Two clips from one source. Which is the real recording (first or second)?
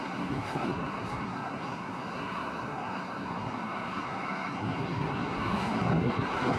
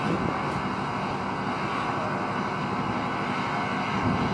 second